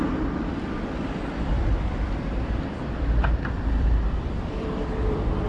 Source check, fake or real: fake